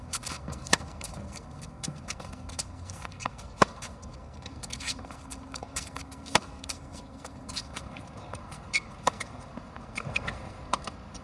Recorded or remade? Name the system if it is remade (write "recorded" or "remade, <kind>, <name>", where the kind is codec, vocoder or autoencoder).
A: remade, codec, SNAC